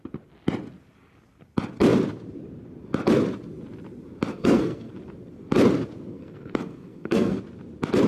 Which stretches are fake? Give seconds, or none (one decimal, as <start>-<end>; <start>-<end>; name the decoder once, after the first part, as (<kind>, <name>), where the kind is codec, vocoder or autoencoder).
4.3-4.9 (codec, SNAC); 6.1-7.4